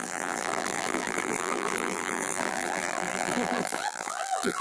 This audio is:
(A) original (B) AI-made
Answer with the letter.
B